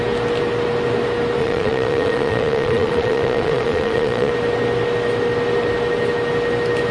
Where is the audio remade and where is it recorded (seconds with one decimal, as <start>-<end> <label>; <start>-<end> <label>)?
0.0-1.4 recorded; 1.4-4.3 remade; 4.3-6.9 recorded